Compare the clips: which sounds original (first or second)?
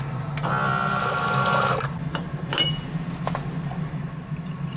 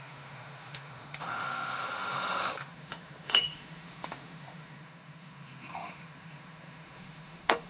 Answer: first